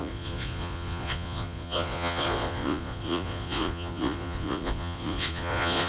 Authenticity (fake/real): fake